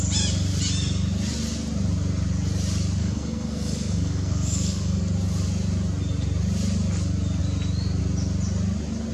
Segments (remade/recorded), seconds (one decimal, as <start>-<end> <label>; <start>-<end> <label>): 0.0-3.0 recorded; 3.0-5.0 remade; 5.0-9.1 recorded